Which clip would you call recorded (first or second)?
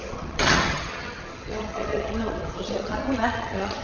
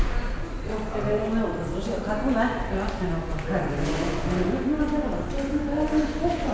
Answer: second